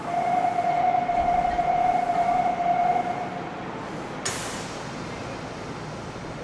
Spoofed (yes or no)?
no